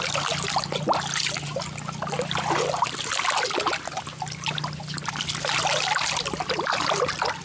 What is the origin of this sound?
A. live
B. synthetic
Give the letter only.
A